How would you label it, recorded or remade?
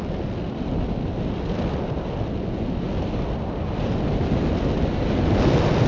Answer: recorded